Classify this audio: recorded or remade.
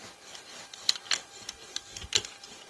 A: recorded